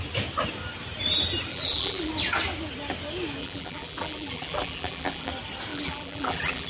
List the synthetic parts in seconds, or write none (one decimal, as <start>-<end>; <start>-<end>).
1.5-2.1; 3.4-5.3; 5.7-6.7